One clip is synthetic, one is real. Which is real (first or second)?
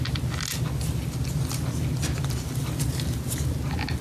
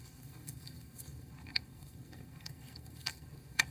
first